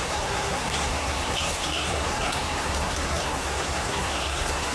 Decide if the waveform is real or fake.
fake